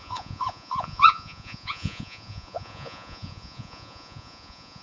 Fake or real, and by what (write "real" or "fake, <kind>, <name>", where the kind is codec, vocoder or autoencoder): fake, vocoder, Vocos